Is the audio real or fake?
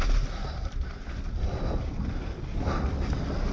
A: real